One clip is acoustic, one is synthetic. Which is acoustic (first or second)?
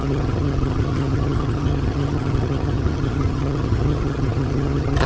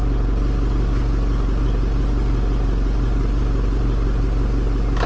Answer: second